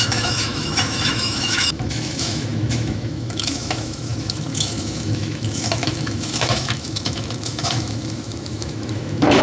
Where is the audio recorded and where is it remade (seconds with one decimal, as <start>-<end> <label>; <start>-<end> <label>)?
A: 0.0-9.4 remade